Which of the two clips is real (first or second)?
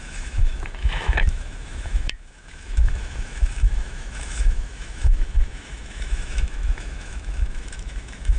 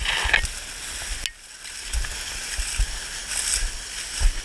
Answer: second